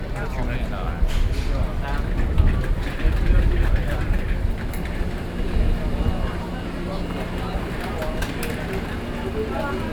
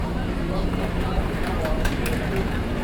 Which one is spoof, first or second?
second